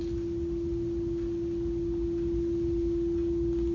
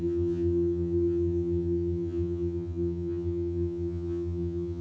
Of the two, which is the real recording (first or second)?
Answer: first